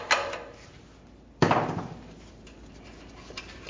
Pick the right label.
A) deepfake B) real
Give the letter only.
B